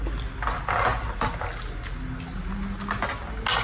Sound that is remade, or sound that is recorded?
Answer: recorded